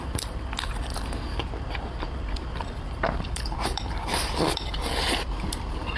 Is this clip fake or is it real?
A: fake